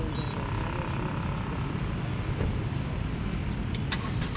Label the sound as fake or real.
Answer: real